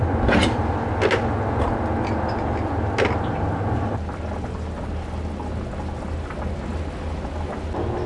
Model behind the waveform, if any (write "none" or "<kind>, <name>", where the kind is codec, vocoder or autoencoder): none